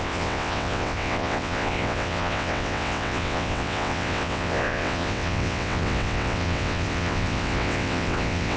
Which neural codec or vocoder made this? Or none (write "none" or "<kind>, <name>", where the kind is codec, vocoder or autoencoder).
vocoder, WaveNeXt